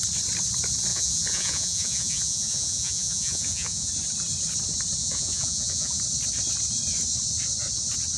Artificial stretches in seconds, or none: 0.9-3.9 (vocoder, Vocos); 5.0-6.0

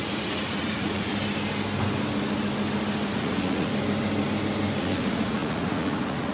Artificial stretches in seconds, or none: 0.0-1.1 (vocoder, Vocos); 3.1-3.7; 4.8-6.3

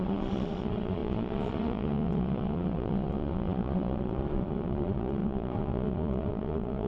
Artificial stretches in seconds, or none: 0.0-6.9 (vocoder, Vocos)